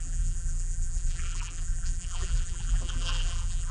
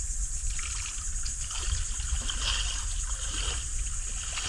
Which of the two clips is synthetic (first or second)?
first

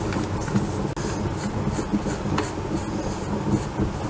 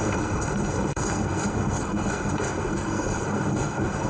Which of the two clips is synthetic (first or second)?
second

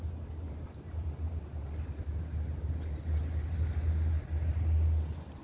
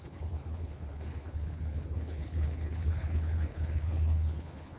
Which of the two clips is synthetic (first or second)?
second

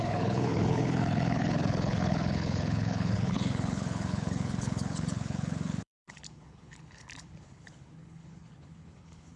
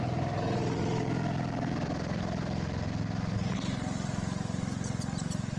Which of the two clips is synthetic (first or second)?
first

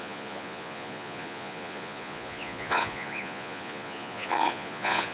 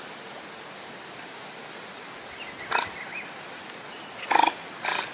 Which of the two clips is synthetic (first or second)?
first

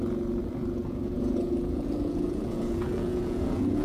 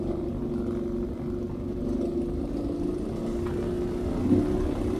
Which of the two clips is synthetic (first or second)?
first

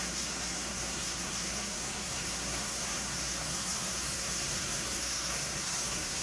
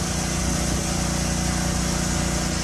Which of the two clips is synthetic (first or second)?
first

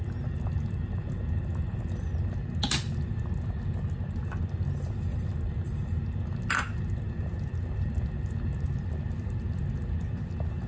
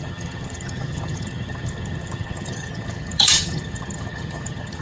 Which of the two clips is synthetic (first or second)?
second